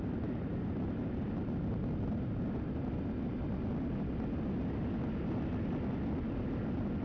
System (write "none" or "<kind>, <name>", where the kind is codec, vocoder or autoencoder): none